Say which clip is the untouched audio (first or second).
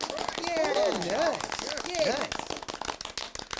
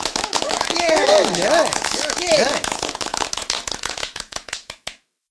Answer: first